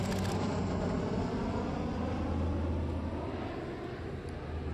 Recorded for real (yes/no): yes